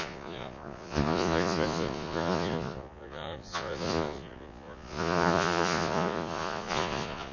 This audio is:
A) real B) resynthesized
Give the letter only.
B